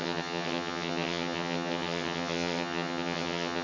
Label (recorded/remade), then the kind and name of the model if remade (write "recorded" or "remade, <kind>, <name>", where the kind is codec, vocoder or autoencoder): remade, vocoder, HiFi-GAN